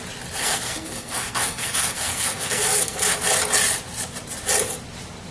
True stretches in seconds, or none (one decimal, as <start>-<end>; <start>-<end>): 0.0-0.4; 3.2-5.3